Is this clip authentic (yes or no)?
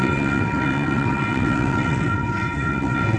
no